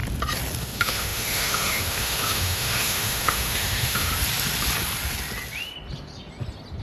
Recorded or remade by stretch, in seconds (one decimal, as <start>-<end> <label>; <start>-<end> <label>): 0.0-0.6 recorded; 0.6-4.1 remade; 4.1-6.8 recorded

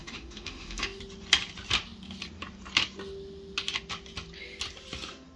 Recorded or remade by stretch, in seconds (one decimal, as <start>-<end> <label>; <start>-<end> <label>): 0.0-1.0 remade; 1.0-5.4 recorded

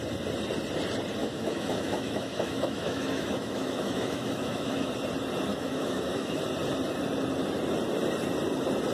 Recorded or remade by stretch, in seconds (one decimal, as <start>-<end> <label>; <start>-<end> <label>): 0.0-1.2 recorded; 1.2-4.9 remade; 4.9-5.5 recorded; 5.5-6.4 remade; 6.4-8.9 recorded

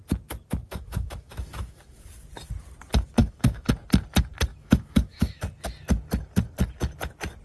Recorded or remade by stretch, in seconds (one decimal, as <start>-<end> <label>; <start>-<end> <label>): 0.0-0.6 recorded; 0.6-2.0 remade; 2.0-3.2 recorded; 3.2-3.7 remade; 3.7-4.5 recorded; 4.5-5.4 remade; 5.4-7.4 recorded

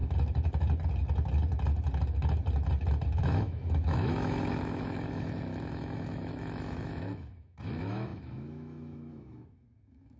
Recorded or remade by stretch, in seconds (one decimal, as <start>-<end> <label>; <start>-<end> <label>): 0.0-3.2 recorded; 3.2-10.2 remade

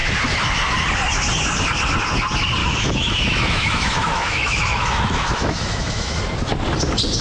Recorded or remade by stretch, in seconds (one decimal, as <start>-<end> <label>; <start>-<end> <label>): 0.0-2.6 recorded; 2.6-6.2 remade; 6.2-7.2 recorded